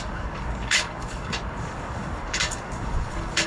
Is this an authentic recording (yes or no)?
no